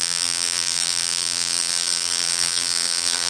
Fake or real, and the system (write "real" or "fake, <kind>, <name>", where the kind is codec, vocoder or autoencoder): fake, vocoder, BigVGAN v2